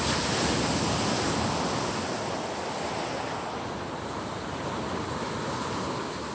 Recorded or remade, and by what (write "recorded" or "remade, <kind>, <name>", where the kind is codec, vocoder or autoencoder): recorded